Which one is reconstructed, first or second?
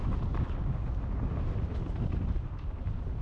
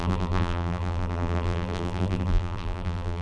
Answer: second